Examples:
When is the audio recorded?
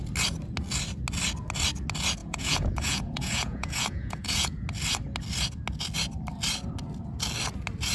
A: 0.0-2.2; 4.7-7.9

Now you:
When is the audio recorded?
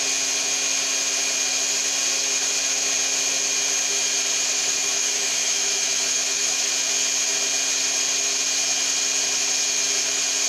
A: 0.0-4.5; 6.7-10.5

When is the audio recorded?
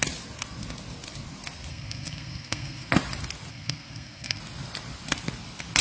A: 0.0-1.7; 2.9-3.5; 4.4-5.8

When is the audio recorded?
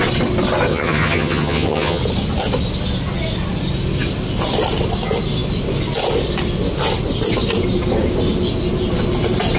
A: 0.0-0.7; 2.0-9.6